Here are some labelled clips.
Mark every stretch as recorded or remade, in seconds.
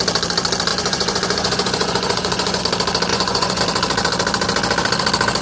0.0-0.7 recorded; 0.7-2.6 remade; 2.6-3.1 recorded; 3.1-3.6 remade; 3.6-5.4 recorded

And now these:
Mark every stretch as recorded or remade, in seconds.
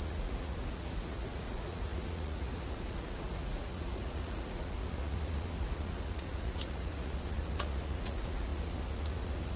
0.0-9.6 remade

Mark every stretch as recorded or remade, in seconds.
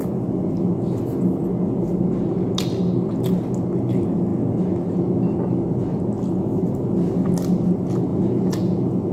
0.0-8.1 recorded; 8.1-9.1 remade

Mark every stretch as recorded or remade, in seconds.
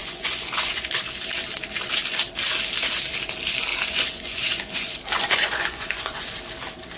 0.0-0.9 remade; 0.9-3.7 recorded; 3.7-6.4 remade; 6.4-7.0 recorded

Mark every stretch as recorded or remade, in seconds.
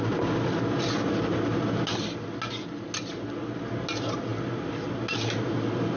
0.0-6.0 recorded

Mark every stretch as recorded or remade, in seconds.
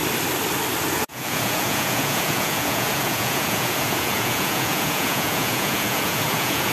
0.0-0.9 recorded; 0.9-6.7 remade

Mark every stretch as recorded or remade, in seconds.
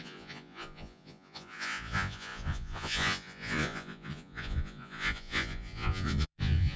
0.0-6.8 remade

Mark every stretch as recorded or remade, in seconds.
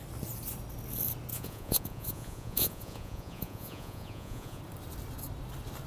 0.0-1.3 recorded; 1.3-4.6 remade; 4.6-5.9 recorded